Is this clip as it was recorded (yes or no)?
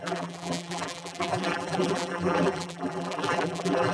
no